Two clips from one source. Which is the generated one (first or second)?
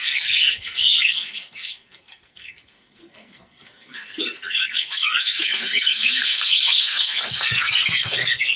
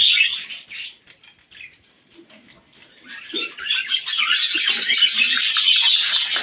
first